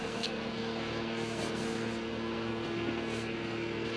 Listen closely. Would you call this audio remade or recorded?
remade